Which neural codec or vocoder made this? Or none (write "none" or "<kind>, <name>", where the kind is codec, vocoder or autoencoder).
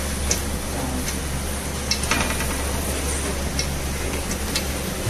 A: none